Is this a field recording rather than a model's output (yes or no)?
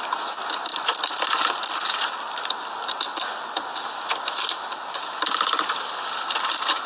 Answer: yes